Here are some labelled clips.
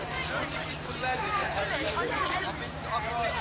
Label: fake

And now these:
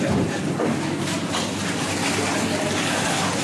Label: real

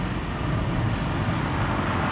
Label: real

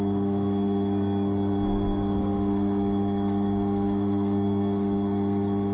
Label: fake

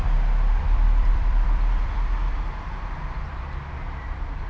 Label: fake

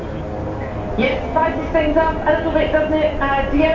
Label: real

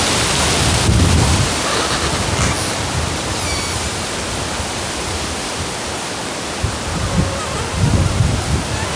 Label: real